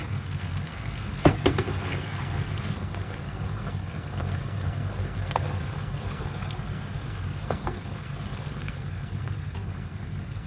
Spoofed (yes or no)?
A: yes